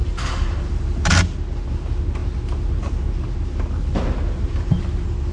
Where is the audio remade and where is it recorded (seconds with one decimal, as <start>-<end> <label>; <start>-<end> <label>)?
0.0-0.8 remade; 0.8-5.3 recorded